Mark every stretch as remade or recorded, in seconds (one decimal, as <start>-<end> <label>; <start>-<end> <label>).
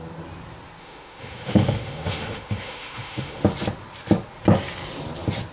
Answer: 0.0-0.8 recorded; 0.8-3.4 remade; 3.4-5.5 recorded